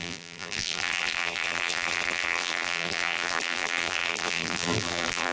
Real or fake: fake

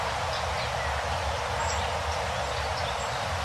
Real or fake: real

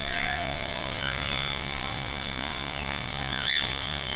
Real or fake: fake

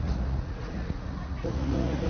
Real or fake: fake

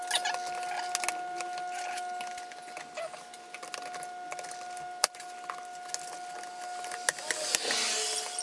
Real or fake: real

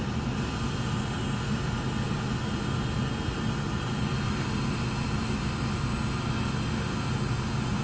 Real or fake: real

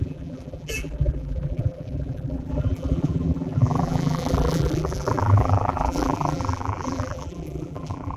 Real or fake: fake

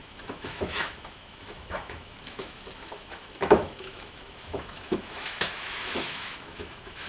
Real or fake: fake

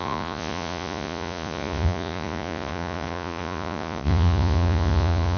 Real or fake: fake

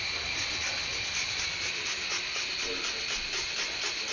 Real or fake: real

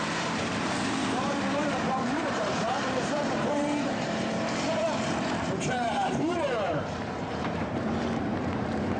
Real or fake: fake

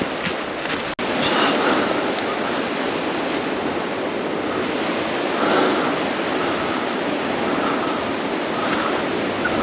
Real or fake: real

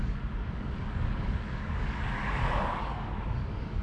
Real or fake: fake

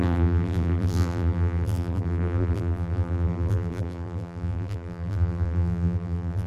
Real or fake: fake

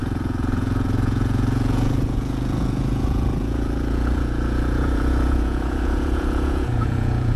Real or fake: fake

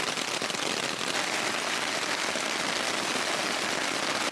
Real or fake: real